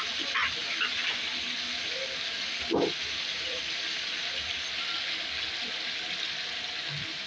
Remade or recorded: recorded